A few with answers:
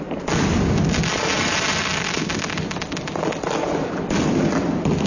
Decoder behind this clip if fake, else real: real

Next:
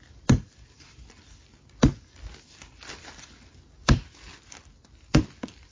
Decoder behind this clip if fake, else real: real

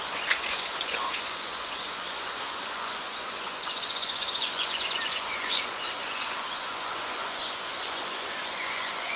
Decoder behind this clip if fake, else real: fake, vocoder, Vocos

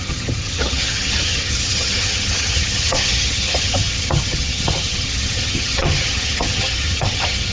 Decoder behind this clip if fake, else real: fake, vocoder, HiFi-GAN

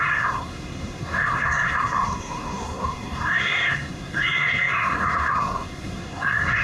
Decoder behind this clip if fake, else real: fake, codec, SNAC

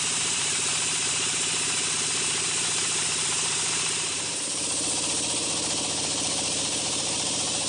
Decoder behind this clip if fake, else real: fake, vocoder, BigVGAN v2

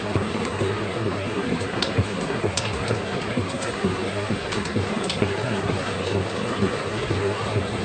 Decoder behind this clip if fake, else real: fake, codec, SNAC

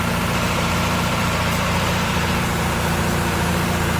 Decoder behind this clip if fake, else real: fake, vocoder, BigVGAN v2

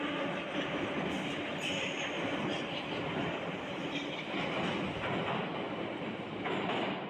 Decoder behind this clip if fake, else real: real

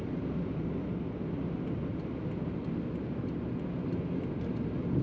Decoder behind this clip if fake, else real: real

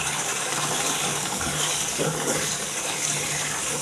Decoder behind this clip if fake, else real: fake, codec, DAC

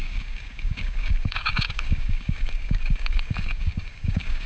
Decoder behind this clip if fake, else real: fake, codec, DAC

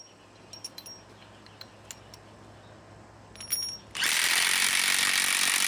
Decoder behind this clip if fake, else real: real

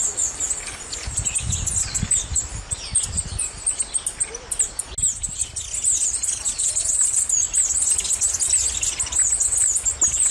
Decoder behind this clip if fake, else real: real